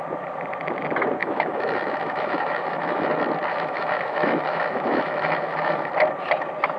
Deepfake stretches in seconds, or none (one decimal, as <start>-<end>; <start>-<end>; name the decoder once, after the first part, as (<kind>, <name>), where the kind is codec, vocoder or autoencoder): 1.2-3.1 (autoencoder, DAC-VAE); 3.5-5.9